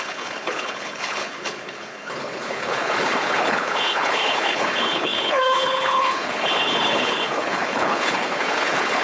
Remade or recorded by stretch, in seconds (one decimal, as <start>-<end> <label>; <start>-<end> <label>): 0.0-9.0 remade